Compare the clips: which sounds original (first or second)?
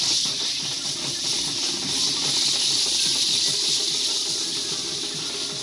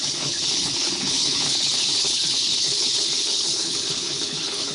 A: first